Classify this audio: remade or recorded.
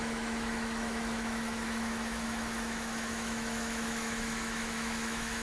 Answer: remade